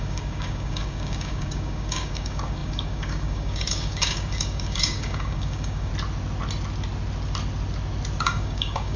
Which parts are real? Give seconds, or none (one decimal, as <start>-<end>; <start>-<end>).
5.9-8.2